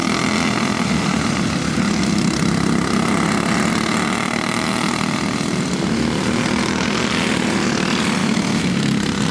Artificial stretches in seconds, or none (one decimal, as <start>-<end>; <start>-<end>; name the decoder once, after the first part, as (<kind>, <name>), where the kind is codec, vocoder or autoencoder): 8.2-8.7 (autoencoder, DAC-VAE)